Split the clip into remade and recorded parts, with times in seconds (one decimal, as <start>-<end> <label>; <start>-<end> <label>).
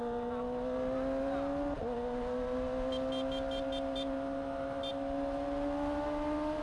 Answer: 0.0-6.6 recorded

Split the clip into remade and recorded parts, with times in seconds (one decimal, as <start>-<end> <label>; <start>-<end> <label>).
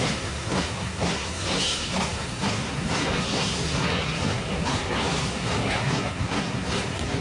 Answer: 0.0-7.2 remade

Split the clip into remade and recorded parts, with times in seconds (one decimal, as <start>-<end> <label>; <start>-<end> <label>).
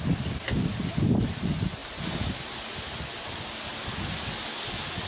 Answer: 0.0-5.1 recorded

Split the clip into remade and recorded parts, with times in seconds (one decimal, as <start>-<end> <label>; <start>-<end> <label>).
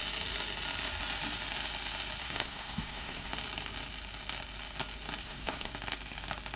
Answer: 0.0-2.2 recorded; 2.2-3.3 remade; 3.3-5.2 recorded; 5.2-5.7 remade; 5.7-6.6 recorded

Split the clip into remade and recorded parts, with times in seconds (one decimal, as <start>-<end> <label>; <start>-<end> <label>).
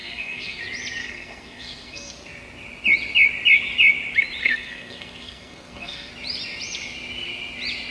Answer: 0.0-0.6 remade; 0.6-1.0 recorded; 1.0-2.1 remade; 2.1-4.4 recorded; 4.4-6.1 remade; 6.1-7.9 recorded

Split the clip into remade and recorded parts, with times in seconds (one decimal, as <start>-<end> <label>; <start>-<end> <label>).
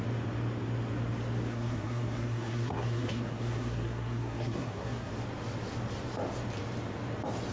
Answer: 0.0-1.5 recorded; 1.5-5.1 remade; 5.1-7.5 recorded